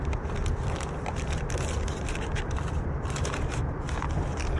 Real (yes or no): yes